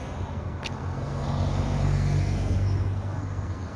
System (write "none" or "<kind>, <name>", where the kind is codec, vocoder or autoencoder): codec, SNAC